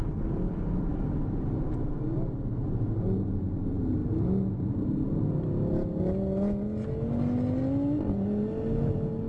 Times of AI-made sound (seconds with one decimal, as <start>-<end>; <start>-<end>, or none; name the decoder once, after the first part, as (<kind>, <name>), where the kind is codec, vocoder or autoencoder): none